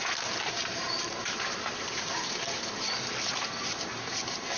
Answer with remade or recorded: remade